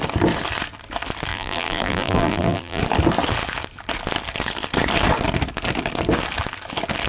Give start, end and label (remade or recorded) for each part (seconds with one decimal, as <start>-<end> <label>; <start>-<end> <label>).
0.0-1.3 recorded; 1.3-2.8 remade; 2.8-7.1 recorded